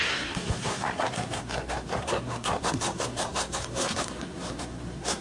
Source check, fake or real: fake